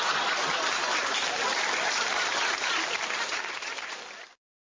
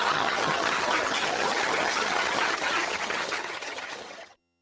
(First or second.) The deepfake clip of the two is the second